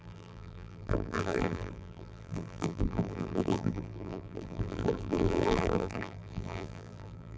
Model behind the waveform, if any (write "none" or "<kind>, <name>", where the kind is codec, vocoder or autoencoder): vocoder, BigVGAN v2